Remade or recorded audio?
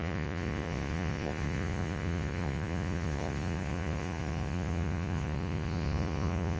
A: remade